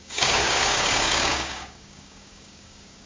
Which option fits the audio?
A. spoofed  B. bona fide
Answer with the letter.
A